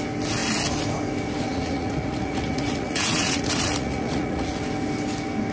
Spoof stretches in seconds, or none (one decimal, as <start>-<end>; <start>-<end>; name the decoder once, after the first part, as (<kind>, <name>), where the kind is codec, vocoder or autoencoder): 1.5-4.6 (vocoder, Vocos)